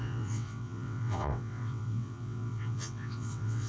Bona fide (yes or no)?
no